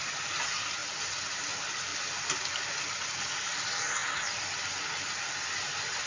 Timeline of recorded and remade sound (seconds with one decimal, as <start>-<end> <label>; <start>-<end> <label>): 0.0-6.1 recorded